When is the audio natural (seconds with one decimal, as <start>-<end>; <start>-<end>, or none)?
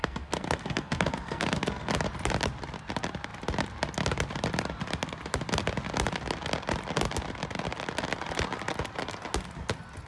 1.9-10.1